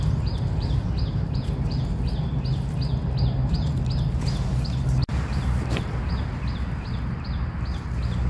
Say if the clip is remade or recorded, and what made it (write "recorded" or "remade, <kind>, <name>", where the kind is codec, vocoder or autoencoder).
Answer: recorded